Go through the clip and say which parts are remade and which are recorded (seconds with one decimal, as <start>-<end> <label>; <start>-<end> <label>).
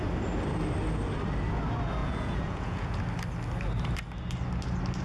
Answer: 0.0-2.0 recorded; 2.0-3.0 remade; 3.0-5.0 recorded